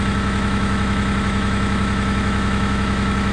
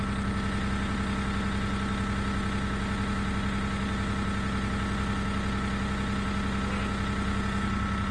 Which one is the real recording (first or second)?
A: second